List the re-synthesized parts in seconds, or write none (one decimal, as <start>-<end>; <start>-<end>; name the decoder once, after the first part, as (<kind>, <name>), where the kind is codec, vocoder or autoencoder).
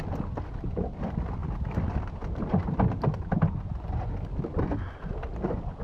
none